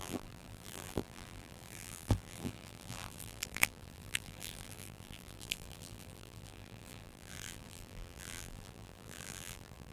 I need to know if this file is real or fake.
fake